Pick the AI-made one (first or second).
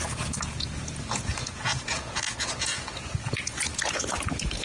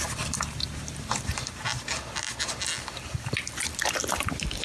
first